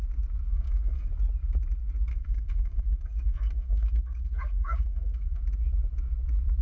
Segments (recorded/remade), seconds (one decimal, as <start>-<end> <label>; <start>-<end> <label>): 0.0-0.5 recorded; 0.5-1.1 remade; 1.1-2.1 recorded; 2.1-5.4 remade; 5.4-6.6 recorded